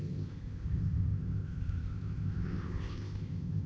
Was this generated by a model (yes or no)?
yes